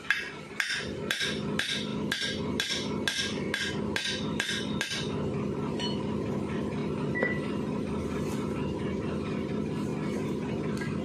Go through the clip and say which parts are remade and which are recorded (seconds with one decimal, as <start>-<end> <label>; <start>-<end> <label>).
0.0-11.0 recorded